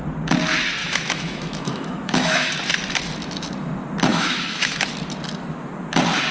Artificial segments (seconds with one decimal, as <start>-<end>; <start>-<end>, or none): 0.8-2.5; 4.1-4.9